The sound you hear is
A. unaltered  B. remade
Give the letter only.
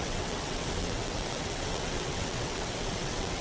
B